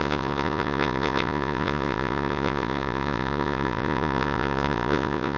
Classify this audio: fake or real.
fake